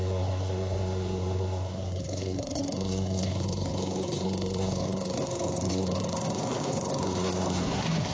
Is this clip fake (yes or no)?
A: yes